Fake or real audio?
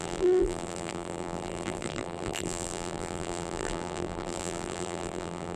fake